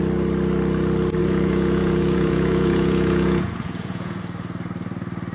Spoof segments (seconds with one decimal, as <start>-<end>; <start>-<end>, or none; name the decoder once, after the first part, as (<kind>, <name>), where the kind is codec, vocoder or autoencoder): 1.2-4.2 (vocoder, Vocos)